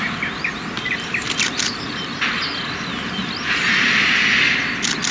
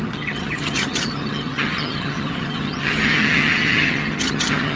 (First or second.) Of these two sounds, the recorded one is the first